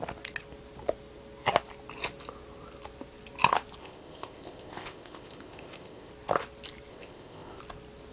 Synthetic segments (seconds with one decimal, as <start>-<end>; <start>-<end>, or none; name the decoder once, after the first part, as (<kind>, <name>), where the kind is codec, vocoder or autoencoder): 3.8-6.1 (codec, ZipCodec); 6.9-7.6